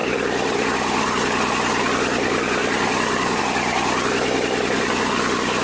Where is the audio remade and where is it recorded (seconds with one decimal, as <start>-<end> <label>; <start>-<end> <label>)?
0.0-5.6 recorded